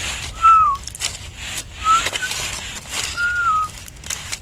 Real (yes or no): no